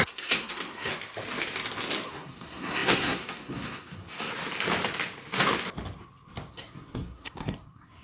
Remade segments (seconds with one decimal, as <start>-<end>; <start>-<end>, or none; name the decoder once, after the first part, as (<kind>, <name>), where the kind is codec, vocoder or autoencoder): 0.0-0.9 (codec, SNAC); 2.1-4.3; 6.5-8.0